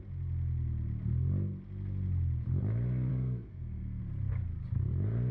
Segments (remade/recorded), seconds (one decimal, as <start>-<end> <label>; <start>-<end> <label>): 0.0-3.1 recorded; 3.1-4.0 remade; 4.0-5.3 recorded